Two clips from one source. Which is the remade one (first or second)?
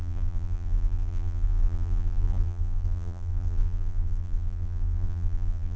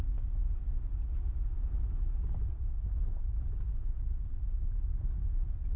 first